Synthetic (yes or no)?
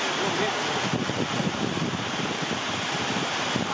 no